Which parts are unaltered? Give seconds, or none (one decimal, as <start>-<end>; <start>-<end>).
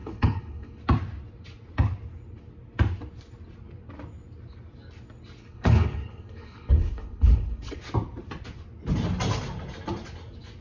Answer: 0.8-5.4; 7.8-10.6